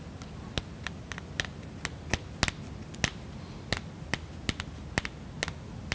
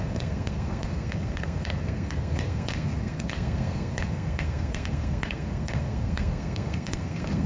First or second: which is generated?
second